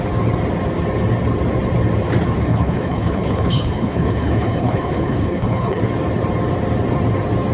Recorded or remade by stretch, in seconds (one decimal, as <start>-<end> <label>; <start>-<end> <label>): 0.0-2.5 recorded; 2.5-5.8 remade; 5.8-7.5 recorded